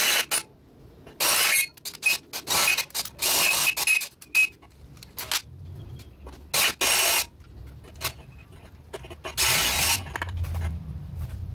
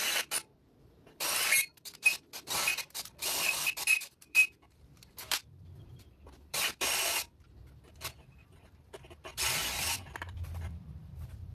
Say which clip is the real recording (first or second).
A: first